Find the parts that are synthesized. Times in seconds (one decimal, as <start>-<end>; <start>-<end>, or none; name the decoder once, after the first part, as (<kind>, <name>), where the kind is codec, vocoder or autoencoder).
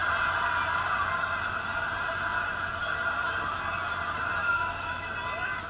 4.4-5.1 (autoencoder, DAC-VAE)